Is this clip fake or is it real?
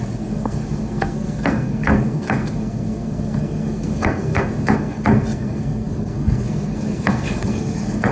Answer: fake